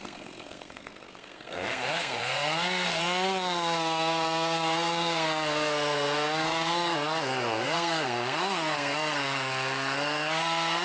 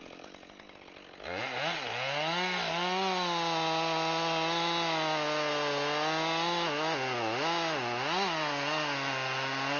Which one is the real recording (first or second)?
second